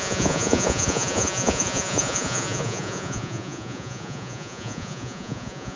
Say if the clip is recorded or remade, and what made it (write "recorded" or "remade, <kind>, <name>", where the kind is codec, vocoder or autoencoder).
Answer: remade, vocoder, Vocos